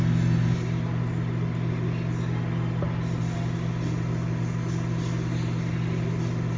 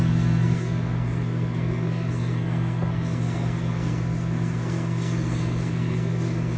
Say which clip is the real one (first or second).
first